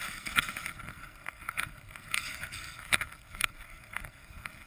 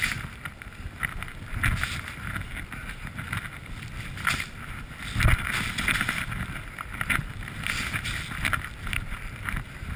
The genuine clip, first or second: second